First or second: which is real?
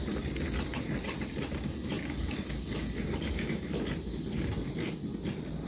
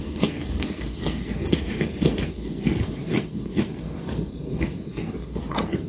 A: first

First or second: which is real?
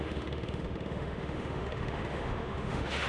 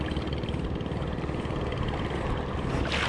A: second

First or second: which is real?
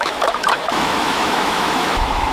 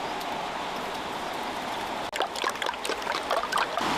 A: second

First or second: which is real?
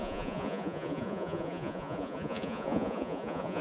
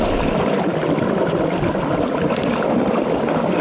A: second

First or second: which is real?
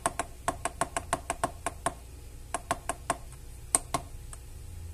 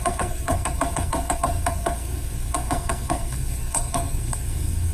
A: first